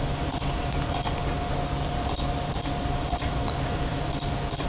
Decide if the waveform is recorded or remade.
recorded